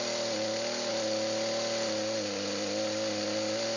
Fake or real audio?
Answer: real